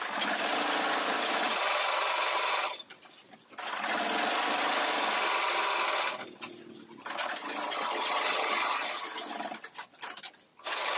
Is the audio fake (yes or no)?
no